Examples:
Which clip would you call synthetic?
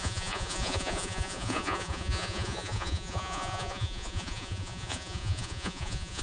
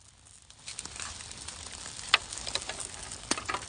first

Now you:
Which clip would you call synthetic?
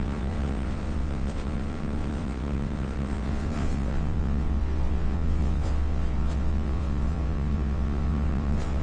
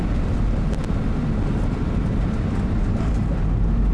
first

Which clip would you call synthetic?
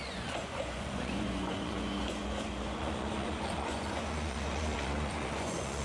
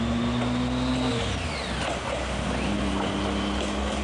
first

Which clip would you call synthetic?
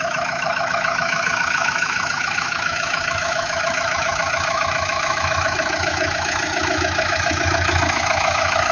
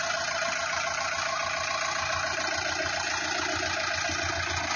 first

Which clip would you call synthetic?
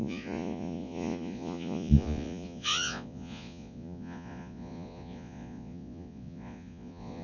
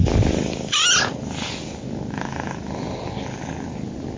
first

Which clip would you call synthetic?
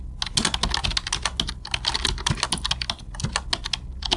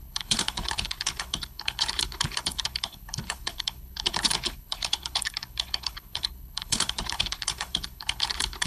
second